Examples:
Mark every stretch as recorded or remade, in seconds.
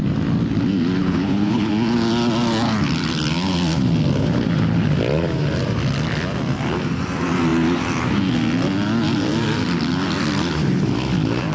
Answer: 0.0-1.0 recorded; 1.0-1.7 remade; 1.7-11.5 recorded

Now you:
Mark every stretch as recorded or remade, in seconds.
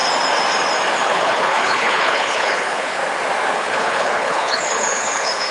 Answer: 0.0-1.0 recorded; 1.0-3.0 remade; 3.0-3.5 recorded; 3.5-5.5 remade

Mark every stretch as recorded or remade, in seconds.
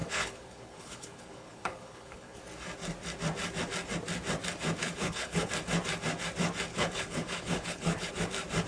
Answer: 0.0-2.4 remade; 2.4-4.8 recorded; 4.8-5.5 remade; 5.5-6.7 recorded; 6.7-8.1 remade; 8.1-8.7 recorded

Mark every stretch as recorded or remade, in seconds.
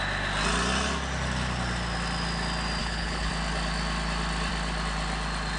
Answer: 0.0-2.8 recorded; 2.8-3.3 remade; 3.3-5.6 recorded